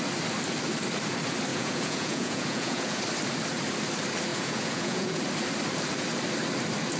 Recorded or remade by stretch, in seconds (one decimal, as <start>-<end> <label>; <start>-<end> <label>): 0.0-1.5 recorded; 1.5-3.0 remade; 3.0-4.3 recorded; 4.3-5.2 remade; 5.2-7.0 recorded